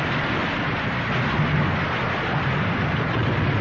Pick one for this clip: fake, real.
real